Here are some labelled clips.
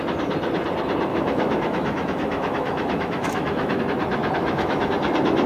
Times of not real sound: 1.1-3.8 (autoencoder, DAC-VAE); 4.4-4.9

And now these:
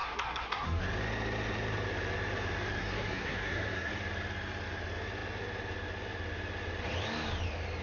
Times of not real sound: 0.0-0.8 (codec, SNAC); 2.8-3.9

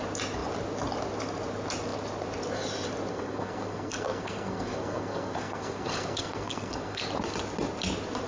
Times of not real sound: 3.1-7.0 (codec, SNAC)

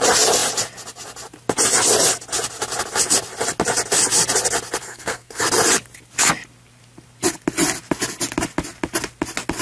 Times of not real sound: 4.8-5.4 (codec, SNAC)

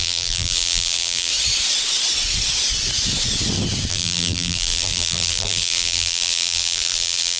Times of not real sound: 0.0-1.3 (vocoder, BigVGAN v2); 3.9-7.4

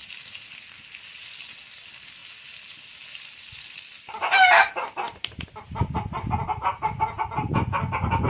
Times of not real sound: 0.0-0.6 (vocoder, BigVGAN v2)